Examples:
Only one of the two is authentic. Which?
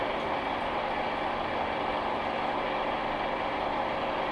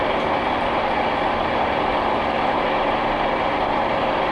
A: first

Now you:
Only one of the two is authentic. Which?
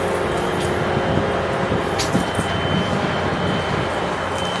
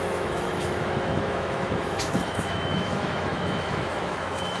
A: first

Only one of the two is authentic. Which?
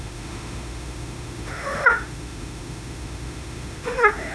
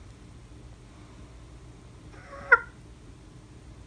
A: second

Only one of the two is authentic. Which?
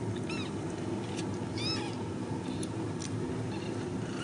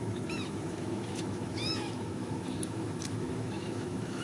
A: first